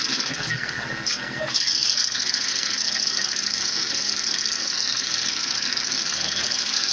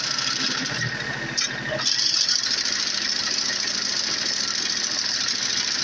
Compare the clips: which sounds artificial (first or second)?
first